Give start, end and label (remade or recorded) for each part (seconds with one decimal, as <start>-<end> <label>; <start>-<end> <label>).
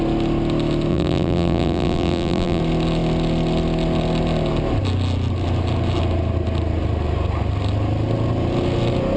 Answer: 0.0-0.9 recorded; 0.9-2.6 remade; 2.6-9.2 recorded